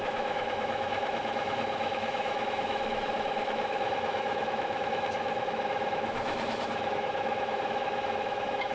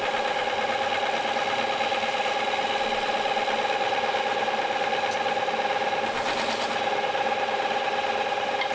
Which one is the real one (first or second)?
second